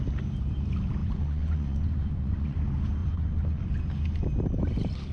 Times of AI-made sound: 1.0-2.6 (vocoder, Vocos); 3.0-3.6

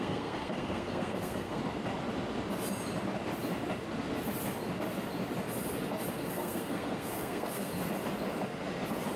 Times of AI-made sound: 0.0-1.6 (codec, SNAC); 6.1-7.7

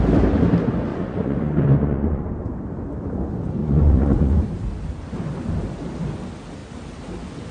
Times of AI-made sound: 0.9-2.3 (vocoder, Vocos); 3.6-4.4